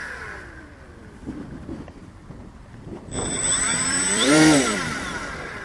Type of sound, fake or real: fake